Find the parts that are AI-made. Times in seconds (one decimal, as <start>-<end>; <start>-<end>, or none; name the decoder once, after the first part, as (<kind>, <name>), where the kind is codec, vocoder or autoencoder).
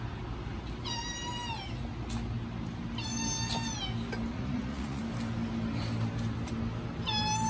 4.3-5.0 (vocoder, Vocos)